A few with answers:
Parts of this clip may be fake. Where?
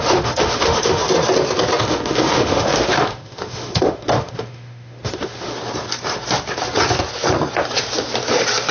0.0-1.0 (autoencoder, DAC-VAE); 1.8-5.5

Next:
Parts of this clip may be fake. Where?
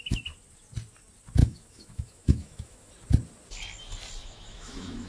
1.4-2.9 (autoencoder, DAC-VAE); 4.2-5.1